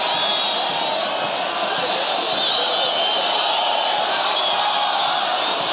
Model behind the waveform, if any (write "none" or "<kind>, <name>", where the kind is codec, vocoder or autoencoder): none